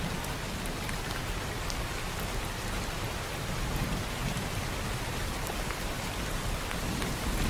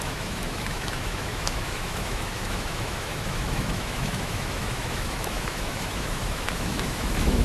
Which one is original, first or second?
first